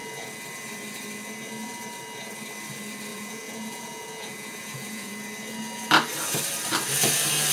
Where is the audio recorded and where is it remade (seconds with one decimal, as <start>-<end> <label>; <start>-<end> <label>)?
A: 0.0-3.1 recorded; 3.1-5.1 remade; 5.1-7.5 recorded